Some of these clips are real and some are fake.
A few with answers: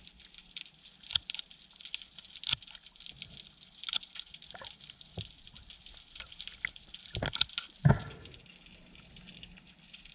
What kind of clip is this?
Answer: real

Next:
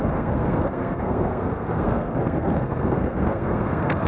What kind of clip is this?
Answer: fake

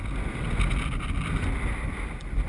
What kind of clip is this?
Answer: real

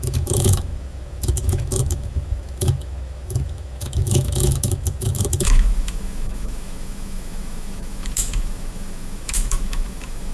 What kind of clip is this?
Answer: fake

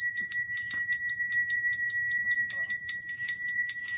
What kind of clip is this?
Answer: fake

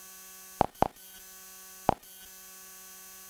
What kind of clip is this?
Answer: real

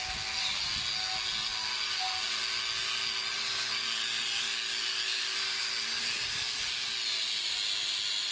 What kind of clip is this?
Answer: real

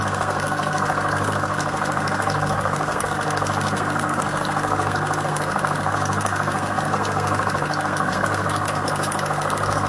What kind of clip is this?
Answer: fake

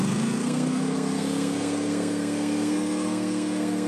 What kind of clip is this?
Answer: fake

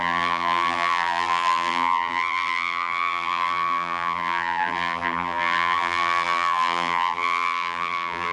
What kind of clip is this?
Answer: fake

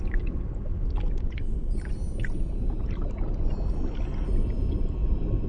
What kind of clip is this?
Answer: real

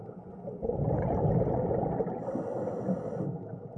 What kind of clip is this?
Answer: real